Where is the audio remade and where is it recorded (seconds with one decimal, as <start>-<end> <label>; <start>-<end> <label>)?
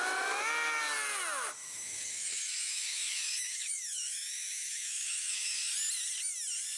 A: 0.0-1.6 recorded; 1.6-5.7 remade; 5.7-6.8 recorded